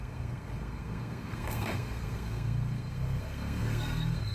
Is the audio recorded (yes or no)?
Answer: no